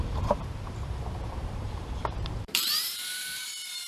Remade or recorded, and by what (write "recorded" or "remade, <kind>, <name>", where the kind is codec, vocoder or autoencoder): remade, vocoder, BigVGAN v2